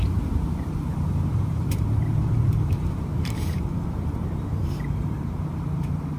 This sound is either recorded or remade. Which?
remade